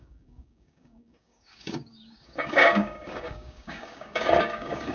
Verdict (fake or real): fake